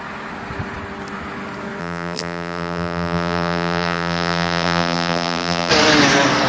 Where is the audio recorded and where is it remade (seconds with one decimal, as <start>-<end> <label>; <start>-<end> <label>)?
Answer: 0.0-1.8 recorded; 1.8-5.7 remade; 5.7-6.5 recorded